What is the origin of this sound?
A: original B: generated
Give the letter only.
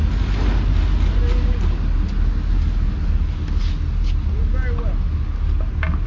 A